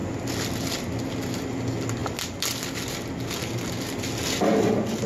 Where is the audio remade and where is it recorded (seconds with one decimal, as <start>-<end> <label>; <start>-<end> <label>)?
0.0-5.1 recorded